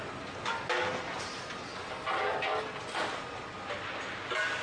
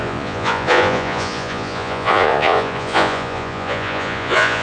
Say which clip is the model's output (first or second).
second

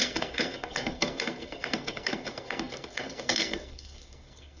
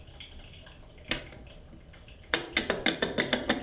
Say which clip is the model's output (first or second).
first